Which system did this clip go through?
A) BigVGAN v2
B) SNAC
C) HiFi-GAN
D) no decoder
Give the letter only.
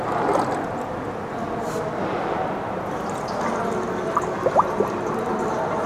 D